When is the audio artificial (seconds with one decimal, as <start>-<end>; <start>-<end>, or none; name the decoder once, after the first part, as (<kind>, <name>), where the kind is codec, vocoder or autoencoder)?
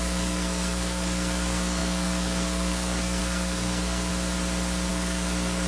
0.0-4.1 (codec, SNAC); 4.9-5.7